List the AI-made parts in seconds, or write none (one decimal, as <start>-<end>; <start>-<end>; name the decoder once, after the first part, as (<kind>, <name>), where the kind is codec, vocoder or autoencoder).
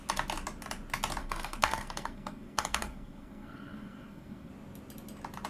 1.2-4.5 (codec, SNAC)